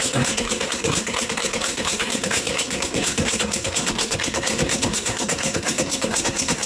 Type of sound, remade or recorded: remade